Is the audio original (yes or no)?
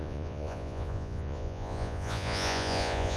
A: no